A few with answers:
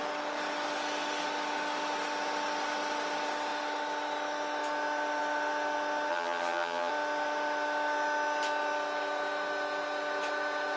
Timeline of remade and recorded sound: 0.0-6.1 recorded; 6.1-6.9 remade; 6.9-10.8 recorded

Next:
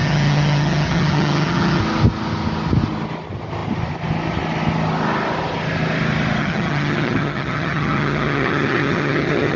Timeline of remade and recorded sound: 0.0-1.8 remade; 1.8-6.4 recorded; 6.4-9.6 remade

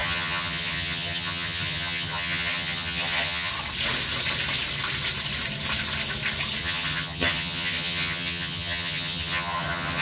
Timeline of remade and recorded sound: 0.0-3.5 remade; 3.5-6.6 recorded; 6.6-10.0 remade

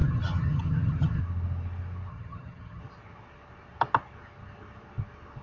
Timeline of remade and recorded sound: 0.0-1.2 remade; 1.2-2.1 recorded; 2.1-2.8 remade; 2.8-5.4 recorded